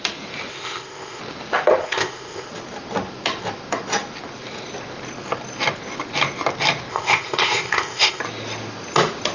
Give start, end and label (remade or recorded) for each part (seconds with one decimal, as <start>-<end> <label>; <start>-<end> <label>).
0.0-0.5 recorded; 0.5-1.2 remade; 1.2-1.8 recorded; 1.8-2.5 remade; 2.5-6.9 recorded; 6.9-8.2 remade; 8.2-9.3 recorded